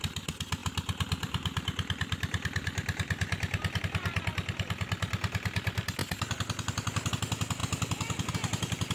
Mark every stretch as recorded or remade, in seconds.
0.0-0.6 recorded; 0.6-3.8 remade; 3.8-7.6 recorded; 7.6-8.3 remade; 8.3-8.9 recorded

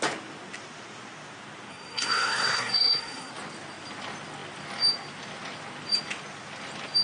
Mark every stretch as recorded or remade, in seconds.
0.0-1.7 recorded; 1.7-3.3 remade; 3.3-7.0 recorded

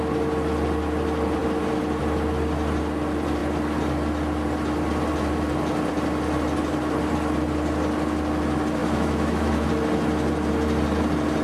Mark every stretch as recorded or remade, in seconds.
0.0-8.8 recorded; 8.8-9.7 remade; 9.7-11.4 recorded

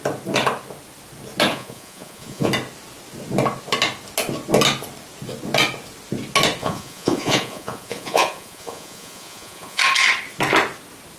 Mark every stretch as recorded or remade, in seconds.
0.0-1.5 recorded; 1.5-2.5 remade; 2.5-6.6 recorded; 6.6-9.8 remade; 9.8-11.2 recorded